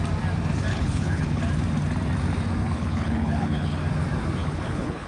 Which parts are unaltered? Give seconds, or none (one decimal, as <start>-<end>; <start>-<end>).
0.0-0.7; 1.4-2.6; 3.8-4.4